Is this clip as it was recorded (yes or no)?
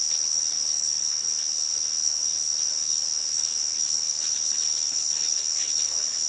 no